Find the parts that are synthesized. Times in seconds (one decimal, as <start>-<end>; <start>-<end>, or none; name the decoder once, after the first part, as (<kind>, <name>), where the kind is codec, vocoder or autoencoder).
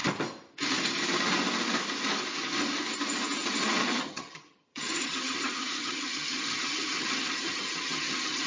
3.8-8.5 (vocoder, HiFi-GAN)